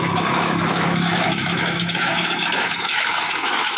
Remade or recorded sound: remade